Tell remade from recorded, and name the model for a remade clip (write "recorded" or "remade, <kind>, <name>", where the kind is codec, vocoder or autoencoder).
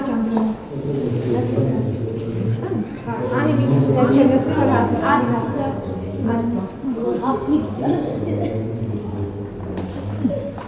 recorded